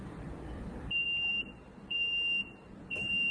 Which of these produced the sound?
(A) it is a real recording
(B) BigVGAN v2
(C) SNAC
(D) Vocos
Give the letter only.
B